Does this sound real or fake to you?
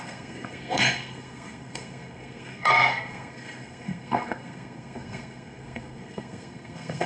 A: fake